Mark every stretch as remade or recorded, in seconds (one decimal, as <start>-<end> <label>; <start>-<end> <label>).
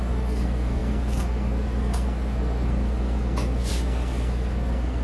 0.0-5.0 remade